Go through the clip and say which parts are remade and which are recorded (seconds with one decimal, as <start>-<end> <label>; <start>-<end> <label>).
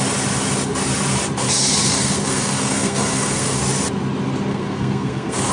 0.0-1.9 recorded; 1.9-3.6 remade; 3.6-4.5 recorded; 4.5-5.5 remade